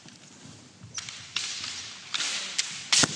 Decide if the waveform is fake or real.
real